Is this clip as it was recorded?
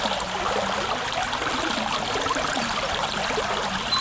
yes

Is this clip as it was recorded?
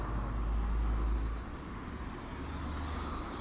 yes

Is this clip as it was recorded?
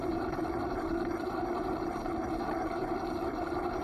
no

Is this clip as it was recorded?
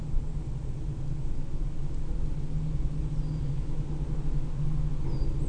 yes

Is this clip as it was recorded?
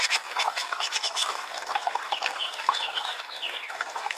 no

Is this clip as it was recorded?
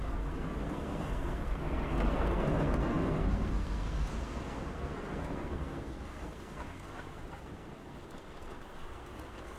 no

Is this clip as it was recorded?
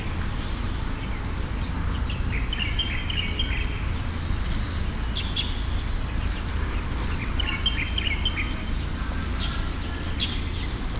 yes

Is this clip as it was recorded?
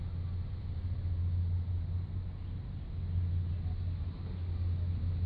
yes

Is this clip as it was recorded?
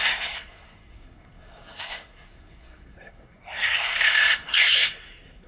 no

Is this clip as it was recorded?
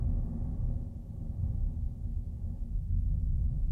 yes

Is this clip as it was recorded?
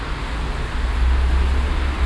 yes